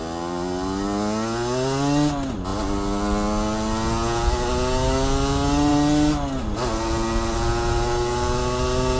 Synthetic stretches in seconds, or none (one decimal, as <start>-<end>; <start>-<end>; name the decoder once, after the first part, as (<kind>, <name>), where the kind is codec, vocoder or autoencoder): none